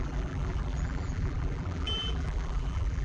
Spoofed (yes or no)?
yes